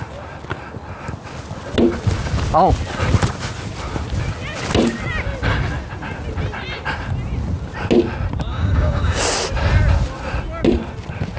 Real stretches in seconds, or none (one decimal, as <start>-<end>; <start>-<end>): 0.0-8.5; 9.2-11.4